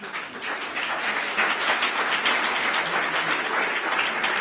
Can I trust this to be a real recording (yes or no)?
yes